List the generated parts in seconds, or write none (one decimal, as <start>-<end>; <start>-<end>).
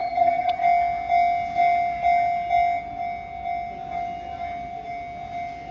0.0-0.6